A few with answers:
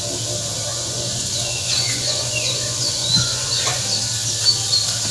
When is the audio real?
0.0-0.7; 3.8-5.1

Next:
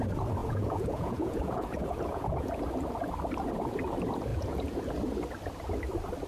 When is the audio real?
0.0-0.4; 2.6-4.3; 4.9-6.3

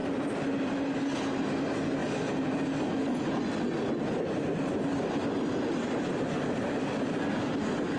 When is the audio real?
0.0-8.0

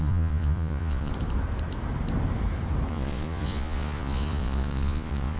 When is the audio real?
1.1-2.9

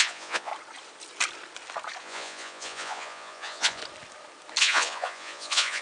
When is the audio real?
0.5-2.0; 3.8-4.6

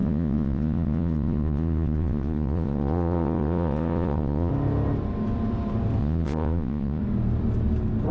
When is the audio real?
4.5-6.0; 7.0-8.1

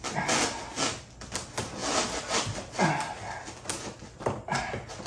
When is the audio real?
0.0-5.1

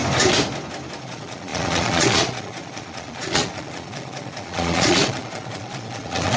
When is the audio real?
0.0-1.0